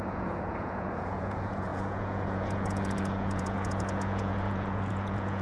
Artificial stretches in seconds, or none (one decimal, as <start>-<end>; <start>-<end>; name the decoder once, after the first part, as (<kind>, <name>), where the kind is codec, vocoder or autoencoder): 0.0-5.4 (vocoder, Vocos)

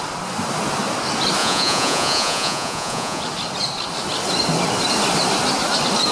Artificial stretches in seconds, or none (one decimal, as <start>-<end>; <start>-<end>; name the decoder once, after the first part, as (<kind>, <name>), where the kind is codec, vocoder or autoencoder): 1.4-3.2 (vocoder, Vocos)